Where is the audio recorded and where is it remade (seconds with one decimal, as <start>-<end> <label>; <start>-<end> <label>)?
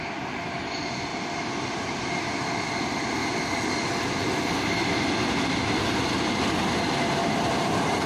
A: 0.0-1.1 recorded; 1.1-2.2 remade; 2.2-8.1 recorded